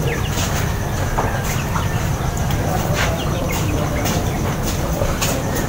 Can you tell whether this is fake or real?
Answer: real